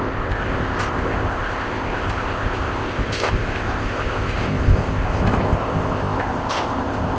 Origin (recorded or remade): remade